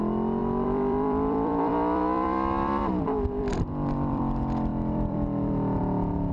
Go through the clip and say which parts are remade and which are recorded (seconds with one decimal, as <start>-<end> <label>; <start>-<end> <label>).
0.0-0.4 recorded; 0.4-4.2 remade; 4.2-4.7 recorded; 4.7-5.8 remade; 5.8-6.3 recorded